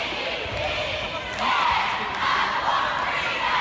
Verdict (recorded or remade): recorded